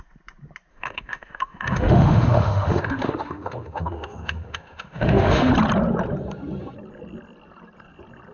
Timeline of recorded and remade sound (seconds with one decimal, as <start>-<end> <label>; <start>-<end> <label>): 0.0-0.7 recorded; 0.7-5.5 remade; 5.5-8.3 recorded